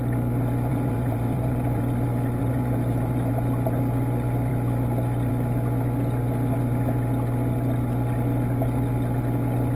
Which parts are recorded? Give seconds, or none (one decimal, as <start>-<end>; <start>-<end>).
0.0-0.7; 1.8-2.4; 3.3-9.8